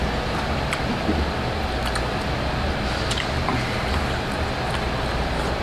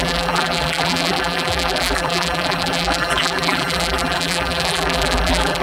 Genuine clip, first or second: first